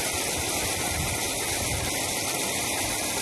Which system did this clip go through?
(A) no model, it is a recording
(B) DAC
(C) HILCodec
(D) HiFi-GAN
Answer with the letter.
A